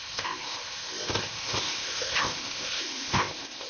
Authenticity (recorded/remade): remade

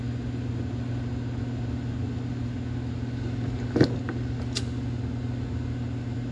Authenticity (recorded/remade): recorded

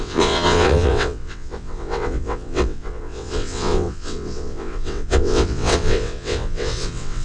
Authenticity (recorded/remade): remade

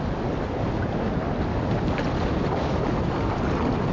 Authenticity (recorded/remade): recorded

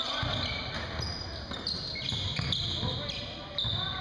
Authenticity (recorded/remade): recorded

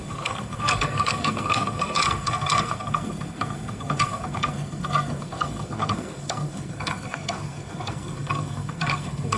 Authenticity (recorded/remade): remade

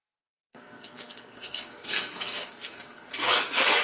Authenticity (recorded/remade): remade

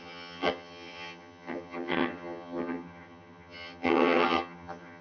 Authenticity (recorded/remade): remade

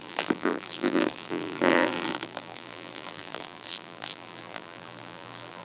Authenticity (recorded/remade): remade